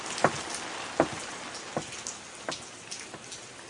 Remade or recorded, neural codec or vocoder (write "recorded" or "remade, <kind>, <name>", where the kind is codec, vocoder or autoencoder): recorded